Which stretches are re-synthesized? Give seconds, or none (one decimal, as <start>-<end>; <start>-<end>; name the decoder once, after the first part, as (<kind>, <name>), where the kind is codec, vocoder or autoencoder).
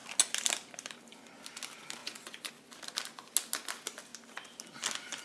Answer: 2.0-2.5 (vocoder, Vocos)